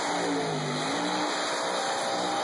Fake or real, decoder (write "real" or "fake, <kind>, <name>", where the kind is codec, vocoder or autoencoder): real